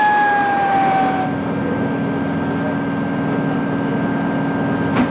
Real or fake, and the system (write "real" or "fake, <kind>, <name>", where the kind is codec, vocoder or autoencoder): real